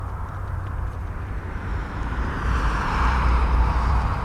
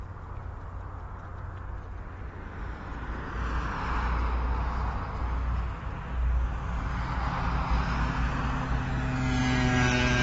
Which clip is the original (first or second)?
second